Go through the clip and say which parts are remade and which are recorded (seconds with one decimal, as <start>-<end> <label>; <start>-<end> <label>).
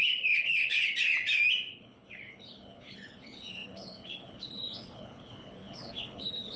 0.0-1.0 remade; 1.0-1.7 recorded; 1.7-6.6 remade